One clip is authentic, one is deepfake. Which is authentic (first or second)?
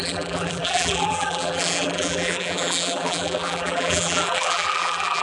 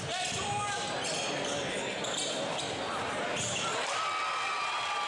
second